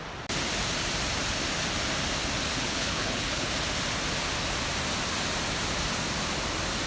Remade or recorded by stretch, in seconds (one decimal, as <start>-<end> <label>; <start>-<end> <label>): 0.0-2.5 recorded; 2.5-3.5 remade; 3.5-6.9 recorded